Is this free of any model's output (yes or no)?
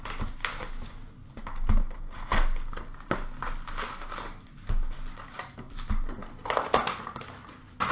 yes